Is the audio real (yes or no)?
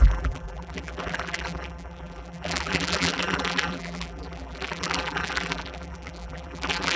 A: no